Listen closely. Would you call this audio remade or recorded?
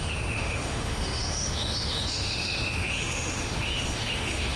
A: remade